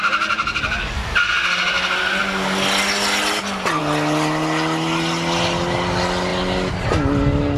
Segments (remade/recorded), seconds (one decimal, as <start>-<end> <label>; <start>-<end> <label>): 0.0-7.6 recorded